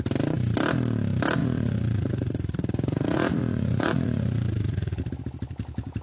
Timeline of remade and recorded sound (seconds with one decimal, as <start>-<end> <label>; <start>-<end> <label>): 0.0-1.4 recorded; 1.4-5.0 remade; 5.0-6.0 recorded